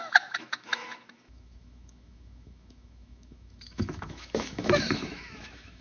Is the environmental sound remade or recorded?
remade